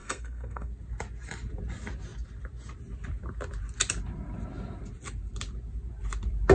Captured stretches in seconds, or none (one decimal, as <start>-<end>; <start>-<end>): 0.7-6.5